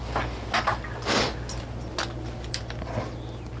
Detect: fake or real real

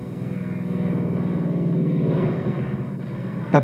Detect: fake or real fake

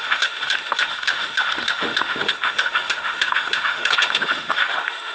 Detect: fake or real fake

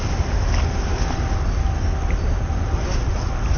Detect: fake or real real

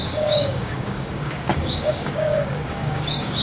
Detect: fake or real fake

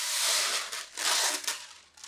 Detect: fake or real real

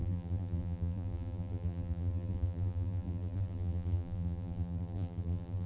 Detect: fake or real fake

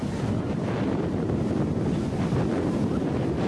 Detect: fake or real real